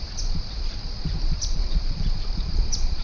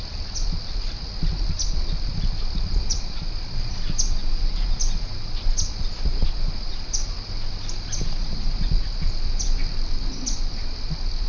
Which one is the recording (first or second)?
second